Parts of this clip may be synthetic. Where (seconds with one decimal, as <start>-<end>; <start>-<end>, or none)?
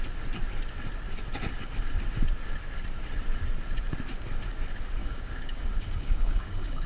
5.0-6.9